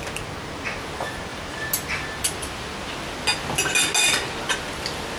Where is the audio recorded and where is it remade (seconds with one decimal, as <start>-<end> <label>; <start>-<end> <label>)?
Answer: 0.0-5.2 recorded